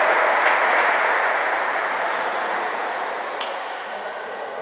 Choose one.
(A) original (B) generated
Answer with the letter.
B